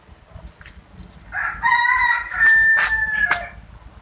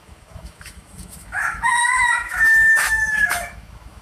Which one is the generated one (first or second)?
second